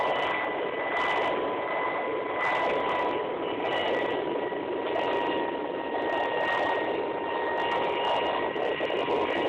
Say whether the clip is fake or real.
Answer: real